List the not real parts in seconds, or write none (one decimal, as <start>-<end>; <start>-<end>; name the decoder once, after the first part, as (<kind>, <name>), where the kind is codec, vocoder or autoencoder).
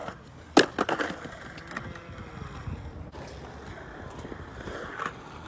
none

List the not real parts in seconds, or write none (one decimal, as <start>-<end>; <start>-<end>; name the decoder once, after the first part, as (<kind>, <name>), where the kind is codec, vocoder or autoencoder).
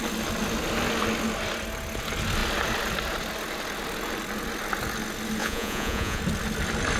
5.4-6.2 (vocoder, Vocos)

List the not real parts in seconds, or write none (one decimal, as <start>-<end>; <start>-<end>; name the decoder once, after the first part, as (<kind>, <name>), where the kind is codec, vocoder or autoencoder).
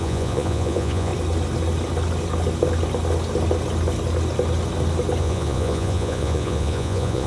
0.0-1.1 (vocoder, Vocos); 5.2-7.3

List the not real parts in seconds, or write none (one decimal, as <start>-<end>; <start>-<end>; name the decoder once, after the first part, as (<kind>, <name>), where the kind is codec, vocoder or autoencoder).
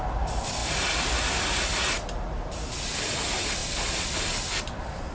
3.6-4.1 (vocoder, Vocos)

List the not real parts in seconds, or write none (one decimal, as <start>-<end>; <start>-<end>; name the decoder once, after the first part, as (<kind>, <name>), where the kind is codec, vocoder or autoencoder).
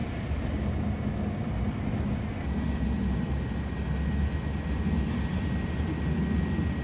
none